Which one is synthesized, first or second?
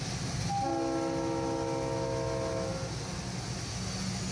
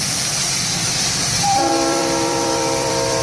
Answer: second